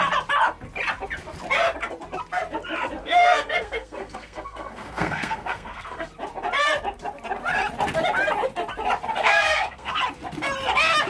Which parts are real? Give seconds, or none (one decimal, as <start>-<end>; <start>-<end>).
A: 0.0-3.0; 6.1-9.2; 9.9-11.1